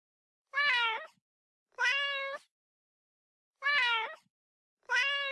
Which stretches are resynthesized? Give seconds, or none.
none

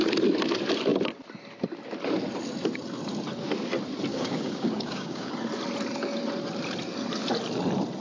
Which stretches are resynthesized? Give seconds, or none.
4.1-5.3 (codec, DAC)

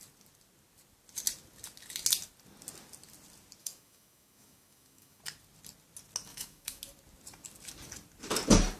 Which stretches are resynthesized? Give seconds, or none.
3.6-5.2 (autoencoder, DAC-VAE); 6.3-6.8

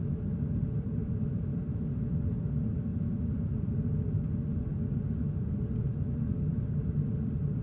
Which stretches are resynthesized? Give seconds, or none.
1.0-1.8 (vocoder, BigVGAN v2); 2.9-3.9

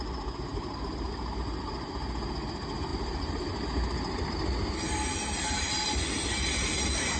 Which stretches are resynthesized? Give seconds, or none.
none

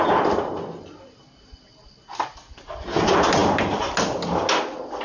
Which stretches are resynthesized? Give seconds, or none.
none

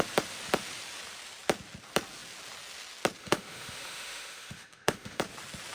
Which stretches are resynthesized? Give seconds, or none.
3.2-5.2 (autoencoder, DAC-VAE)

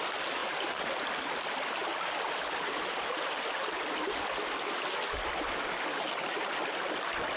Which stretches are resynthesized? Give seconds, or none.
none